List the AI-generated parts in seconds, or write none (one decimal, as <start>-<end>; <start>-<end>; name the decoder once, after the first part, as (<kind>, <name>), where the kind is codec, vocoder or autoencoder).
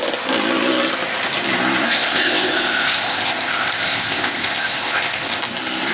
1.9-5.4 (codec, ZipCodec)